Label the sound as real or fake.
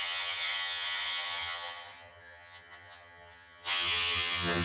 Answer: fake